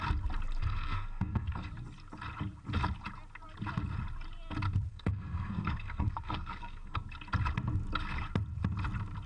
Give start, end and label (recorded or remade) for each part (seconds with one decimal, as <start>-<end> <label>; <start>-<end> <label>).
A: 0.0-0.6 recorded; 0.6-1.7 remade; 1.7-4.9 recorded; 4.9-7.0 remade; 7.0-9.3 recorded